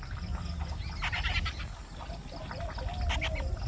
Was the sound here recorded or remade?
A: recorded